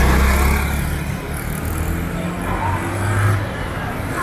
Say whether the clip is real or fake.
real